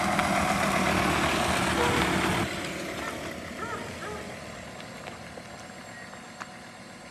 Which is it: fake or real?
real